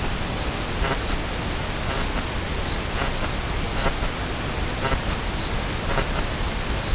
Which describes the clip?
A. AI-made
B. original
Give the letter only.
B